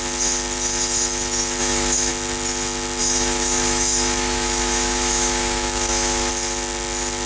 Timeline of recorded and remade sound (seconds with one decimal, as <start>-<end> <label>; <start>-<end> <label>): 0.0-1.6 recorded; 1.6-2.1 remade; 2.1-3.0 recorded; 3.0-6.3 remade; 6.3-7.3 recorded